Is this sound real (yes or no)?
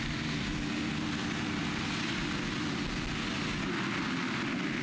yes